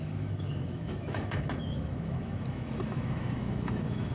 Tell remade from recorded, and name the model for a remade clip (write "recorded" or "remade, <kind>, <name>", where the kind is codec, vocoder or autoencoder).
remade, autoencoder, DAC-VAE